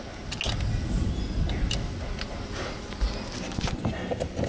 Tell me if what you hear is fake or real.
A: real